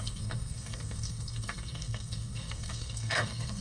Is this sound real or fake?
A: fake